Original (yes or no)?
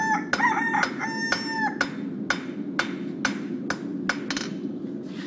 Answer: yes